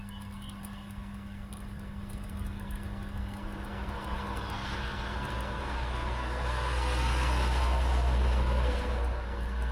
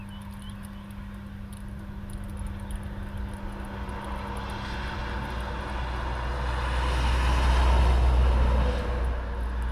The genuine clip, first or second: second